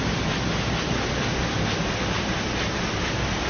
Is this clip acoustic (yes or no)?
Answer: yes